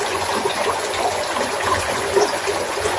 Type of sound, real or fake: fake